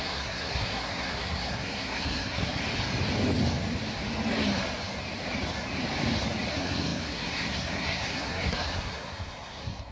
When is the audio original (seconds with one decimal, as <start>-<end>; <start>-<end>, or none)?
2.6-6.5